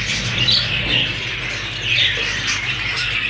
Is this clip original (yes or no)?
yes